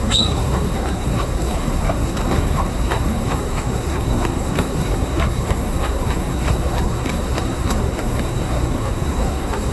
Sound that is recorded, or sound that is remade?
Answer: remade